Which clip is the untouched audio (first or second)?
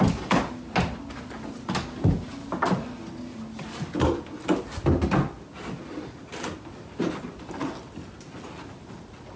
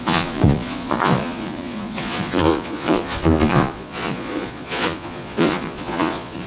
first